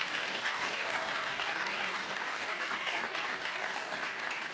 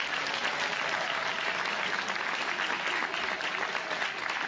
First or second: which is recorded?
second